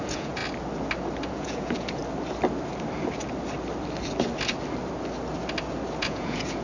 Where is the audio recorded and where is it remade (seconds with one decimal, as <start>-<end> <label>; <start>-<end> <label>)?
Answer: 0.0-0.4 remade; 0.4-1.3 recorded; 1.3-2.0 remade; 2.0-6.0 recorded; 6.0-6.6 remade